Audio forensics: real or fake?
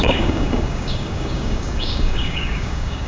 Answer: fake